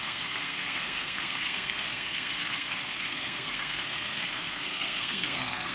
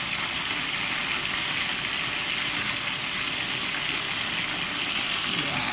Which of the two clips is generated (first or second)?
first